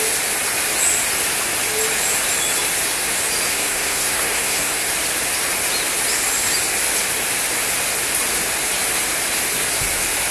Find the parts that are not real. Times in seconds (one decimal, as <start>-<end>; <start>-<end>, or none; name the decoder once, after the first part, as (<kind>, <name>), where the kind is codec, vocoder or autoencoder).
3.5-4.9 (codec, SNAC)